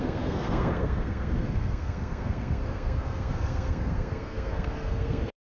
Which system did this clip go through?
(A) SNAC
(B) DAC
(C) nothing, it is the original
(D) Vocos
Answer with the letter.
A